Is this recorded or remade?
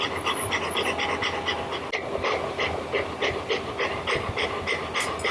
recorded